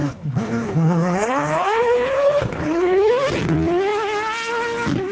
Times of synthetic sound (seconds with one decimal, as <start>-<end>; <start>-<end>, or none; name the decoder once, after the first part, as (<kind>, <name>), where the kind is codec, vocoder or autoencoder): 0.0-3.1 (codec, HILCodec)